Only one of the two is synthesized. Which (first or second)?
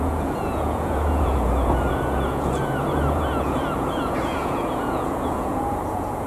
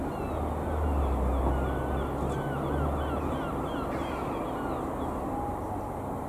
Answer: first